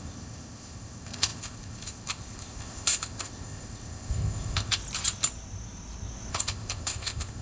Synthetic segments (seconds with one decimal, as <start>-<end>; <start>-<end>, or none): 0.0-4.8; 6.3-7.4